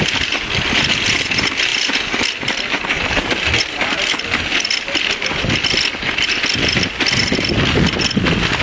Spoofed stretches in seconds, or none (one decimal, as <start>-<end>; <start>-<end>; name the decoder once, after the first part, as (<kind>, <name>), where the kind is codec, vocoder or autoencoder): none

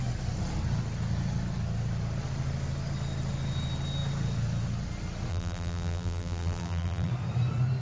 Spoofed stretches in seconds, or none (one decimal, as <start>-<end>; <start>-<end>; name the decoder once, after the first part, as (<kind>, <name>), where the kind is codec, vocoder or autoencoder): 5.3-7.1 (vocoder, BigVGAN v2)

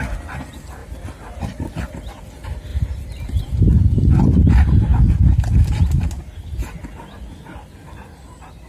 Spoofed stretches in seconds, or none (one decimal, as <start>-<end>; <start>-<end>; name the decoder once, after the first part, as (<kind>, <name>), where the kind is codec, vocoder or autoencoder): 2.7-3.6 (vocoder, BigVGAN v2)

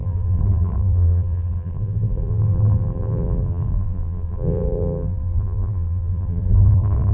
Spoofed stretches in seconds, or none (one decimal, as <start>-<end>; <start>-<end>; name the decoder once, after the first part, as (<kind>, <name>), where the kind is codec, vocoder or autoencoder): 0.0-7.1 (vocoder, BigVGAN v2)